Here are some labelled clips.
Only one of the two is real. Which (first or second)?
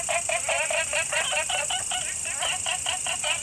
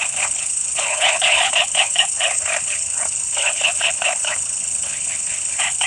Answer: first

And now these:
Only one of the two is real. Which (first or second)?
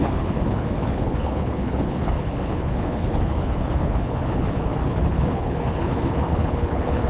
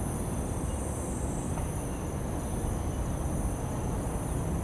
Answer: second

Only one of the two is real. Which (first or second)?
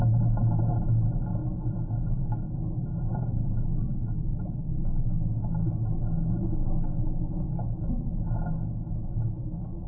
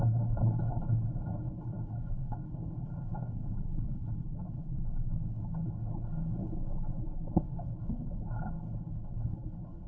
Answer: first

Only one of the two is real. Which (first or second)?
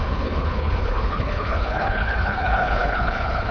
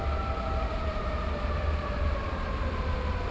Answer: second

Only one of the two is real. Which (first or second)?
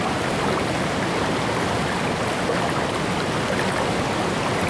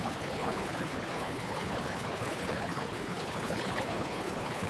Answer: first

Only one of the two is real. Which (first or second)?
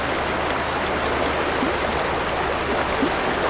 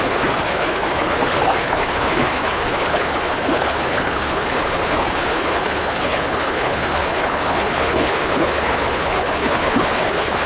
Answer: first